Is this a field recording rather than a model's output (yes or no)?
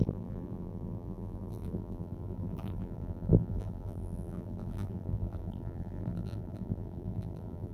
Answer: no